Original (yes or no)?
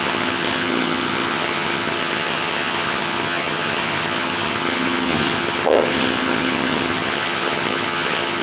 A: no